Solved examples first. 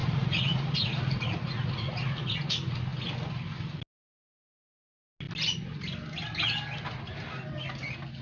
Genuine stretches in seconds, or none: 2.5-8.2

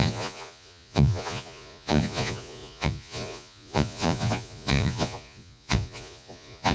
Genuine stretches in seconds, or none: none

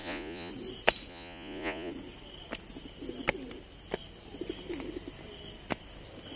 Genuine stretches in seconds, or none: 0.5-1.1; 1.9-6.4